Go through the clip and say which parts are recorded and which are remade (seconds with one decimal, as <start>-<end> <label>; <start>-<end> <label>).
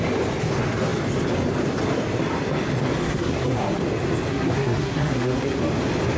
0.0-3.0 recorded; 3.0-3.8 remade; 3.8-4.3 recorded; 4.3-5.6 remade; 5.6-6.2 recorded